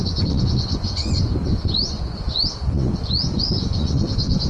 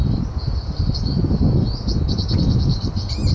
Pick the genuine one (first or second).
second